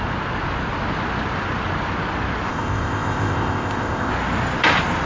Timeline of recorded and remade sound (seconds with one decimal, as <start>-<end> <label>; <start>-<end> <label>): 0.0-2.5 recorded; 2.5-4.1 remade; 4.1-5.1 recorded